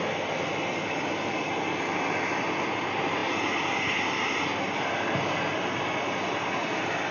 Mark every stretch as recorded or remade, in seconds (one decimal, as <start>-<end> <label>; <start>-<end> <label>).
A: 0.0-7.1 recorded

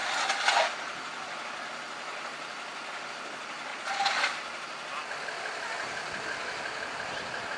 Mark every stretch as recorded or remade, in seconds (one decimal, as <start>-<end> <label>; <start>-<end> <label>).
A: 0.0-3.7 recorded; 3.7-4.2 remade; 4.2-7.6 recorded

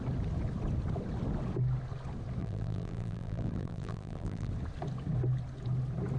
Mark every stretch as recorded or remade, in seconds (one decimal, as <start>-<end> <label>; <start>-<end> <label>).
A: 0.0-2.4 recorded; 2.4-4.5 remade; 4.5-6.2 recorded

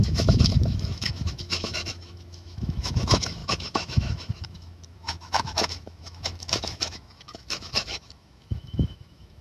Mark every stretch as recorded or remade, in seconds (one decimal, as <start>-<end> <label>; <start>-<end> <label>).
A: 0.0-9.4 remade